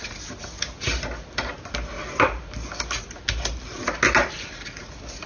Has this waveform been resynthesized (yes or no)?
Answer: no